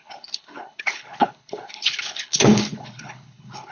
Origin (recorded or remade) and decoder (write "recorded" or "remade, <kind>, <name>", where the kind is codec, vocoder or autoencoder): remade, codec, HILCodec